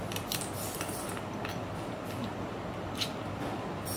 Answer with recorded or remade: recorded